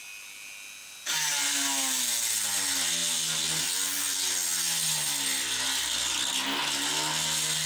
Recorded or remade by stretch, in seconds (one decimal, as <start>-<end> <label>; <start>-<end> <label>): 0.0-7.7 recorded